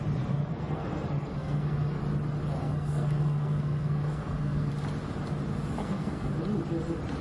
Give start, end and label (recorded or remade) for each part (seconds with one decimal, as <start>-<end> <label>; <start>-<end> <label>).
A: 0.0-0.5 recorded; 0.5-2.0 remade; 2.0-2.6 recorded; 2.6-4.7 remade; 4.7-5.8 recorded; 5.8-6.3 remade; 6.3-7.2 recorded